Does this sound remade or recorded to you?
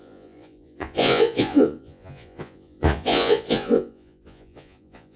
remade